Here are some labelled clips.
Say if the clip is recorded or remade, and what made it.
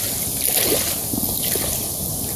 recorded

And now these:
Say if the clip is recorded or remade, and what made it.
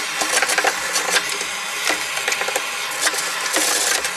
recorded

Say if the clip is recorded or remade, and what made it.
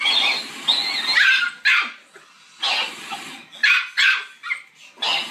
recorded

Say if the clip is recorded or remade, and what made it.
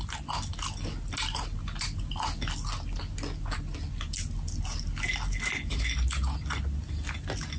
recorded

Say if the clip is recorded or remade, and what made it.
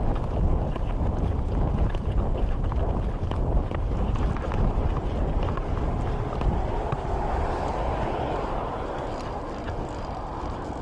recorded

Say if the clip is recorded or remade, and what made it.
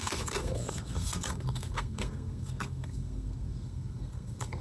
remade, codec, SNAC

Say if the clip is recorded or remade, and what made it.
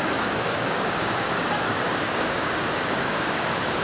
remade, codec, DAC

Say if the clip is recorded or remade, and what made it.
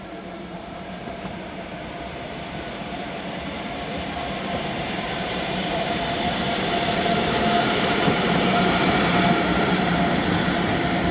remade, vocoder, BigVGAN v2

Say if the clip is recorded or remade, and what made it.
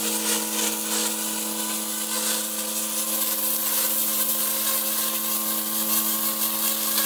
recorded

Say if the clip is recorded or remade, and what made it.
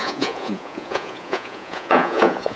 remade, vocoder, Vocos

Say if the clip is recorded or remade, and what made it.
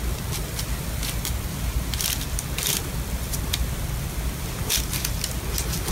recorded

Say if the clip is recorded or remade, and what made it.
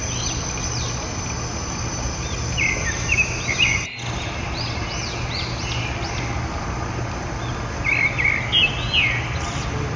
recorded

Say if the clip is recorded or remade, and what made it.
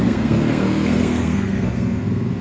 remade, codec, SNAC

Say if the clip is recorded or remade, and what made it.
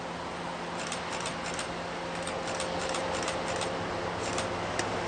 recorded